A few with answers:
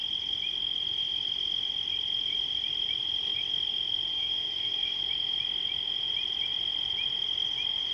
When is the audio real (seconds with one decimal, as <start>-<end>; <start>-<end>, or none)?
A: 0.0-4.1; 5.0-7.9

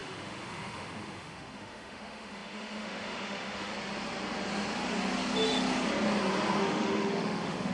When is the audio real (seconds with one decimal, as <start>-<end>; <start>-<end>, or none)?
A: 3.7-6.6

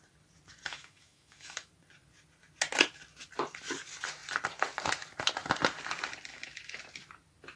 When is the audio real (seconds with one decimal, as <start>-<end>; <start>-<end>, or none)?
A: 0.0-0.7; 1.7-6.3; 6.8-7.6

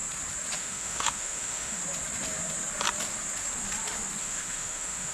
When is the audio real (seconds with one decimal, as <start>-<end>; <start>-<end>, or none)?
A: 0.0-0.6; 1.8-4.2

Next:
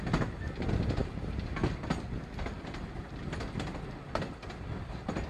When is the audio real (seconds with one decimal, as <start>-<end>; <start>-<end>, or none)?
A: 0.0-5.3